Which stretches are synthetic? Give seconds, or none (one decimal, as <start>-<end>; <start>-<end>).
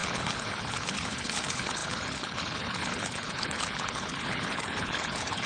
0.0-5.5